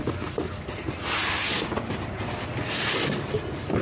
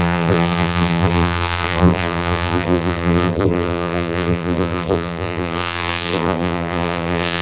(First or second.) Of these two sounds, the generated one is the second